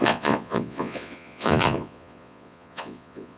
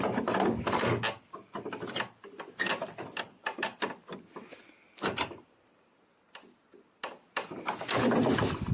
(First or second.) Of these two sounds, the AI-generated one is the first